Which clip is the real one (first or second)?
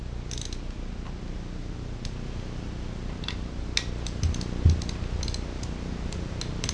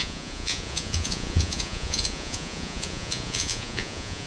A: first